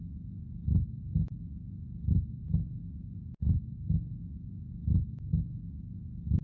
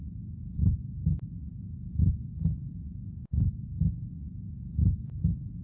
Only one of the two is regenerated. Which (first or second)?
second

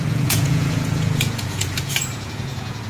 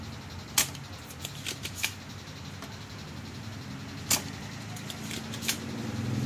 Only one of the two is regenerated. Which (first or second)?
first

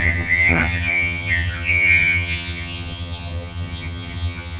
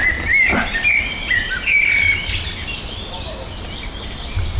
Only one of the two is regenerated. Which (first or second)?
first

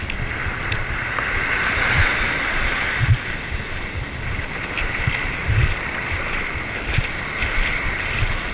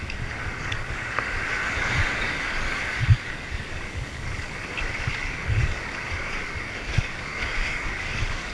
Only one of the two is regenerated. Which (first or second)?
second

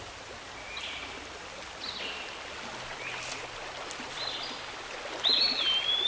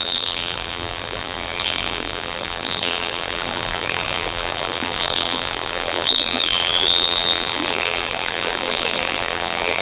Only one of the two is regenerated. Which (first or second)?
second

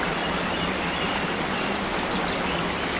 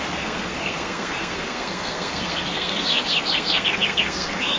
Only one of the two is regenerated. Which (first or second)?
second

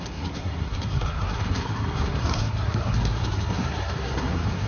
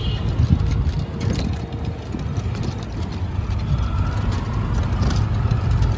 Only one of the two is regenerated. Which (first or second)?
first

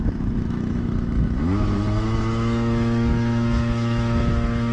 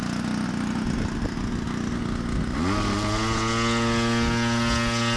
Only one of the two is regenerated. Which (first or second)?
first